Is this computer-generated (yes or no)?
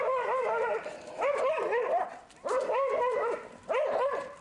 yes